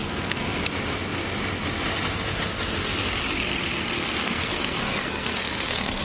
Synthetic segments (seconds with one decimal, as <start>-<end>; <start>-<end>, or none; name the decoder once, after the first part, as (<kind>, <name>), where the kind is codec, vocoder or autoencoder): 0.0-0.6 (codec, SNAC); 4.2-6.0